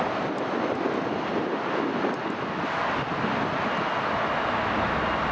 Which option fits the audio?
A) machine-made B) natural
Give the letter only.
B